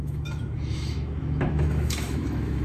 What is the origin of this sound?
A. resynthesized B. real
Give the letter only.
A